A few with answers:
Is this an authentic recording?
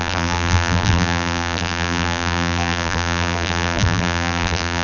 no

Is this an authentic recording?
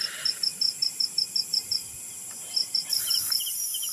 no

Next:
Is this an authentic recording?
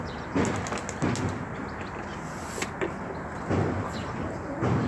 yes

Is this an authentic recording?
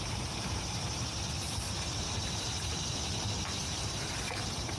no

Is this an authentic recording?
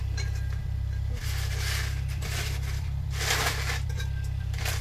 no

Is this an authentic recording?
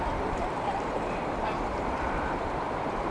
no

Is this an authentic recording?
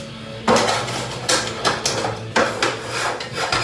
yes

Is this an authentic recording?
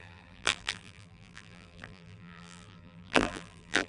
no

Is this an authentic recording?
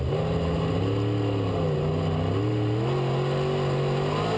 yes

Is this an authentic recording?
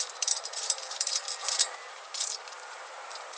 no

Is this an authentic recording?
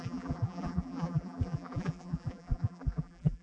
no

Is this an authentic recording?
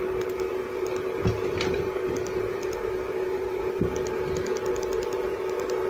yes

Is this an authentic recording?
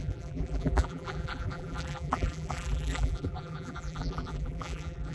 no